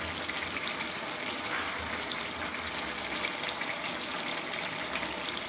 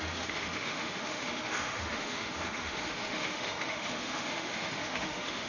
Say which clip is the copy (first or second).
second